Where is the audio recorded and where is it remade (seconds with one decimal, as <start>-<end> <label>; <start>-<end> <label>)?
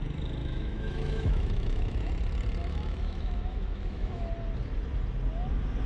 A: 0.0-0.4 recorded; 0.4-2.1 remade; 2.1-2.6 recorded; 2.6-4.3 remade; 4.3-5.9 recorded